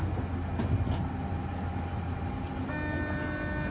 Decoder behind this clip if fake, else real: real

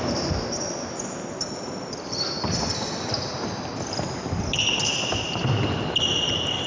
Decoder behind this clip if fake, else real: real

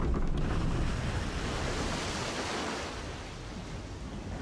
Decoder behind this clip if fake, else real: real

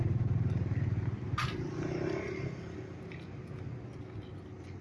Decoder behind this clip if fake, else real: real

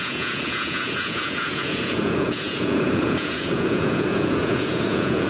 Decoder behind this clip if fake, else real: fake, vocoder, Vocos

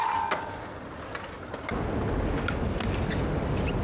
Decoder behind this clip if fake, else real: real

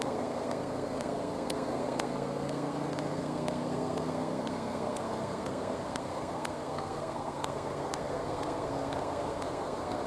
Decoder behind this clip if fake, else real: fake, codec, SNAC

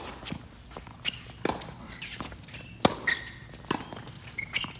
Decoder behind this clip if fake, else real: real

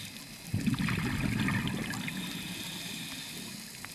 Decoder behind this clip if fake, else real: real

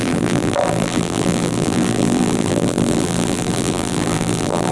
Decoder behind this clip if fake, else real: fake, vocoder, BigVGAN v2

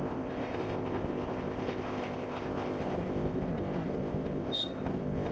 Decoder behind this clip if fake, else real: fake, codec, ZipCodec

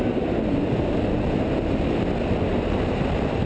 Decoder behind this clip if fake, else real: real